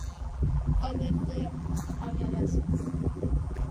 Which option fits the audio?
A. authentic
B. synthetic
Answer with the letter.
B